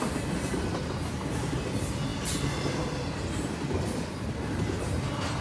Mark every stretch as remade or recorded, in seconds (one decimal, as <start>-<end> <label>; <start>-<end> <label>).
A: 0.0-5.4 recorded